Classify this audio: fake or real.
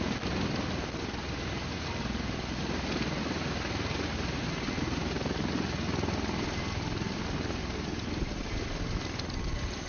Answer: real